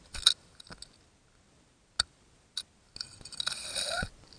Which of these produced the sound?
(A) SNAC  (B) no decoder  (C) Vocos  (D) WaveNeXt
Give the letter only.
B